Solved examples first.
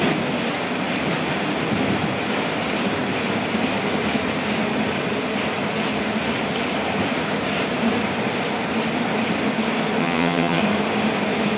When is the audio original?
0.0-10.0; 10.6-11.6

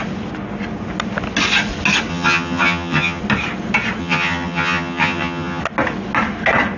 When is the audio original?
0.0-2.1; 3.2-4.0; 5.6-6.8

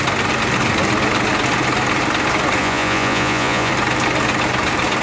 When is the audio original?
0.0-2.6; 3.7-5.0